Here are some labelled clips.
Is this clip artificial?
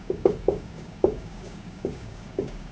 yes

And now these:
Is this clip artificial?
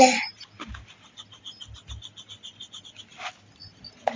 no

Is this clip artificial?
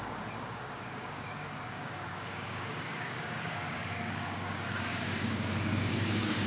yes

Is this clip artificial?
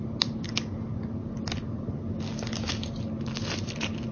no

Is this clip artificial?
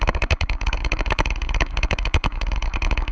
yes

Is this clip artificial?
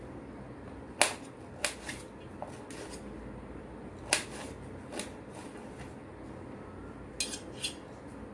no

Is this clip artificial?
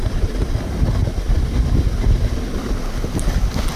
no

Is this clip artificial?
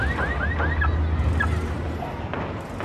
no